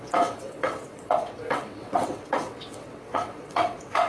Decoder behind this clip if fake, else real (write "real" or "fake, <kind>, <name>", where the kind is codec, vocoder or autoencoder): fake, vocoder, WaveNeXt